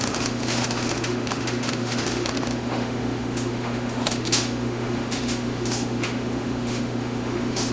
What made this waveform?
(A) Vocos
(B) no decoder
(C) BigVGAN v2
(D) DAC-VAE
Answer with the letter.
D